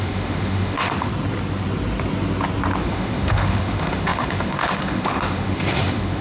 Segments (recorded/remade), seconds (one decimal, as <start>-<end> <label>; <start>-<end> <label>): 0.0-1.1 remade; 1.1-2.8 recorded; 2.8-6.2 remade